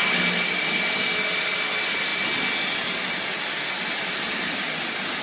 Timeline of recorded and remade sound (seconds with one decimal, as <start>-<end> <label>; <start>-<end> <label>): 0.0-5.2 recorded